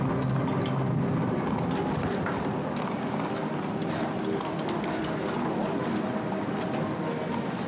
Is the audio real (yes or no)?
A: yes